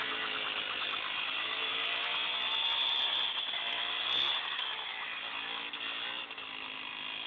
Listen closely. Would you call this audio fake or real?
real